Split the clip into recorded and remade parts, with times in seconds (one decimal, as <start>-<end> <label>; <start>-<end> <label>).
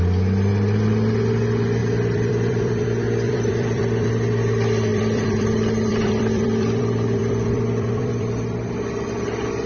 0.0-1.8 recorded; 1.8-4.1 remade; 4.1-4.9 recorded; 4.9-8.7 remade; 8.7-9.7 recorded